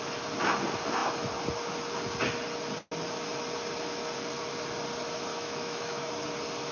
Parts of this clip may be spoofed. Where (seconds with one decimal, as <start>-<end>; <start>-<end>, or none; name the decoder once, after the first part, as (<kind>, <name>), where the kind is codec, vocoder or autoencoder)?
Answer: 5.3-6.1 (autoencoder, DAC-VAE)